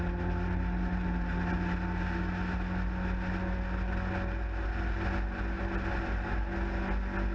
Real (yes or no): yes